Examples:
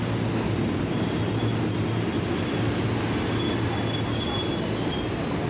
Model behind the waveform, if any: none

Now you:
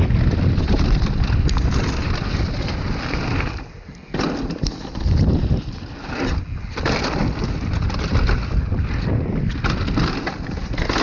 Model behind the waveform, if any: none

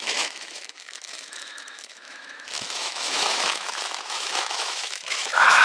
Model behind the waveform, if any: autoencoder, DAC-VAE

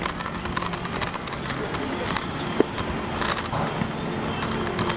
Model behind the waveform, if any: none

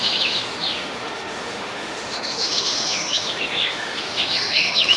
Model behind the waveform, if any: autoencoder, DAC-VAE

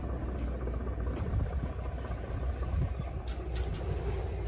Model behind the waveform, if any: none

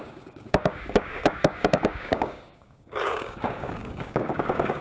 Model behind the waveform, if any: codec, DAC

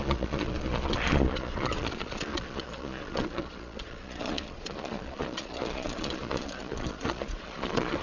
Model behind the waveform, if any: vocoder, Vocos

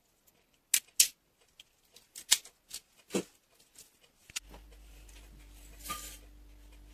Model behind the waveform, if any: none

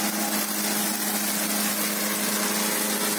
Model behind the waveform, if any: none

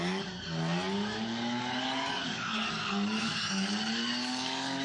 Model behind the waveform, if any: codec, DAC